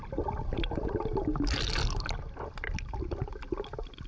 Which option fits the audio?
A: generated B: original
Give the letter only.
B